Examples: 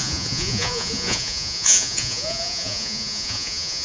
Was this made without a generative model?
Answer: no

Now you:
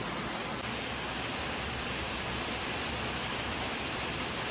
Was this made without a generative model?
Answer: yes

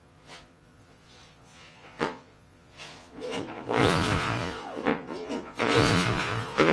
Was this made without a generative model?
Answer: no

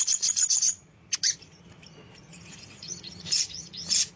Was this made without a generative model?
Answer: no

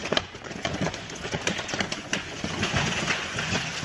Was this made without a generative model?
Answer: no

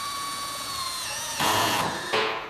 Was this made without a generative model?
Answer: no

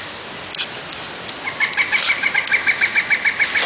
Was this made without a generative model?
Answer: yes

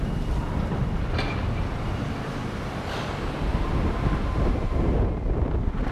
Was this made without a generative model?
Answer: yes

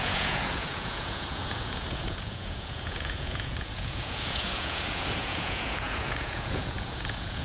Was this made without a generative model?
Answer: no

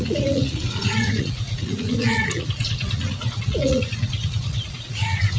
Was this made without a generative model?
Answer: no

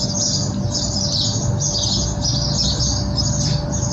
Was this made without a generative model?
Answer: yes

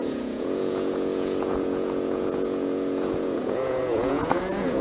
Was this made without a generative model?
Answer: no